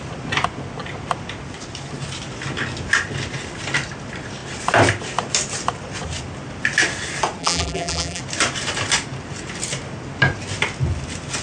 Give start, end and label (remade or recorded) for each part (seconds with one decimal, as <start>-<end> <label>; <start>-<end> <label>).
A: 0.0-7.4 recorded; 7.4-8.2 remade; 8.2-11.4 recorded